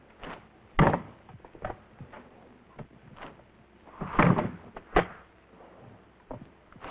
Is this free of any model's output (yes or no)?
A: yes